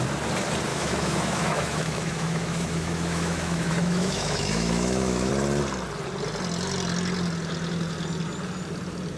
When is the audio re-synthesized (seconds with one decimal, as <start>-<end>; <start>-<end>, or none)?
0.7-5.3